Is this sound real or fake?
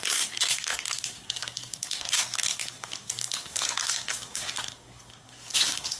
fake